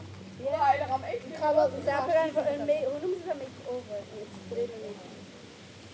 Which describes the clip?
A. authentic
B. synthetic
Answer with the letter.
A